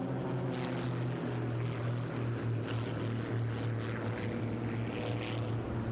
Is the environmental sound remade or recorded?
recorded